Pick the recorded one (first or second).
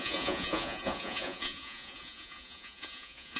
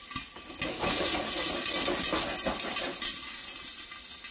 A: second